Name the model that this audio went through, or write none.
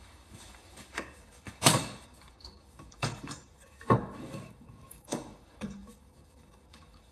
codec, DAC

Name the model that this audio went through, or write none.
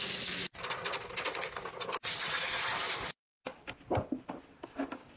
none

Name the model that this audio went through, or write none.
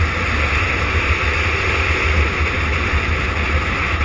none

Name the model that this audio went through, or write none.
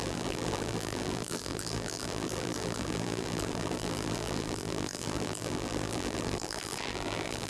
vocoder, BigVGAN v2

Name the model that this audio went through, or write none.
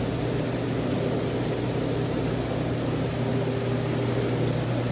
none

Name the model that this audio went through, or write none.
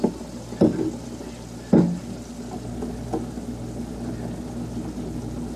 none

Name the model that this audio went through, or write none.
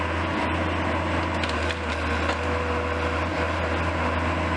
none